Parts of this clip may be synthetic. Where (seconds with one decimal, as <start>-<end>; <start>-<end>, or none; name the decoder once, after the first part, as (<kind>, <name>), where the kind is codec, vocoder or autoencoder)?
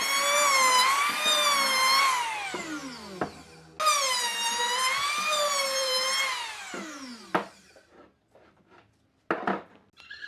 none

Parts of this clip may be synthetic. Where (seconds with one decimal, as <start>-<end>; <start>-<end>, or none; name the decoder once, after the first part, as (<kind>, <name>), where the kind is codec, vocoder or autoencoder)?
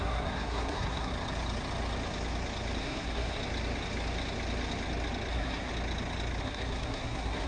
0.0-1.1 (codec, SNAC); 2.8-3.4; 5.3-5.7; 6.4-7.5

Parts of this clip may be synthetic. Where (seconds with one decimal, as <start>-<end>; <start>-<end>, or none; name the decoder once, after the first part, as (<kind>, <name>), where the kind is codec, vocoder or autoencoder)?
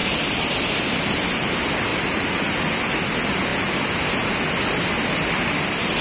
1.9-2.5 (vocoder, BigVGAN v2)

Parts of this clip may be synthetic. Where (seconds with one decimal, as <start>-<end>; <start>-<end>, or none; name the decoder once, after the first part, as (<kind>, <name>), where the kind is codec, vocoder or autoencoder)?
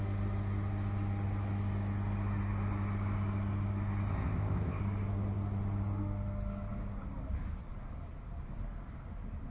4.1-4.8 (codec, ZipCodec)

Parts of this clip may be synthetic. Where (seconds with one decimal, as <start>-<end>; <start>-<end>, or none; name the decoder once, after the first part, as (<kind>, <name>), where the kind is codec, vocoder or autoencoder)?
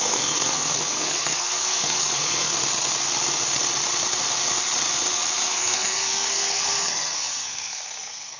0.0-2.5 (codec, SNAC); 5.5-8.4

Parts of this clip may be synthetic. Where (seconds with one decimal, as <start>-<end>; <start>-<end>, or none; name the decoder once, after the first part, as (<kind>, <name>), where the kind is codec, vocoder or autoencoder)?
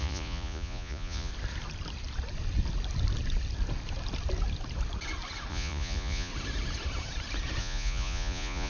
0.0-1.3 (vocoder, Vocos); 5.5-6.3; 7.6-8.7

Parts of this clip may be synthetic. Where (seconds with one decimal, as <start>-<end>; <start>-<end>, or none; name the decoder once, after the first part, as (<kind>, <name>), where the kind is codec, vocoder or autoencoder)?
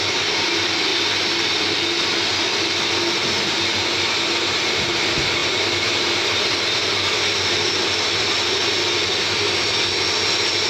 none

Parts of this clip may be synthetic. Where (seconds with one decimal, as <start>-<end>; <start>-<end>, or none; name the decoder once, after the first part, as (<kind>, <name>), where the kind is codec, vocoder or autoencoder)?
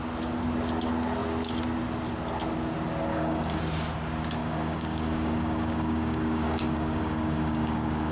3.1-3.6 (codec, DAC); 4.4-8.1